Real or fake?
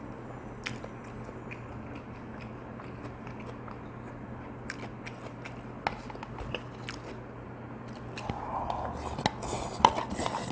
real